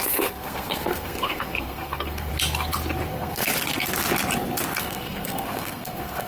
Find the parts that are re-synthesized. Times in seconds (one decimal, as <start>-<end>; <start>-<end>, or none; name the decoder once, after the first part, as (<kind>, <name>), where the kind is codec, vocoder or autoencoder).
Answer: 0.0-2.3 (codec, SNAC); 3.1-3.5; 4.8-6.3